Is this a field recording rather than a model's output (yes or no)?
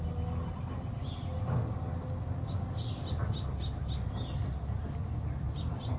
yes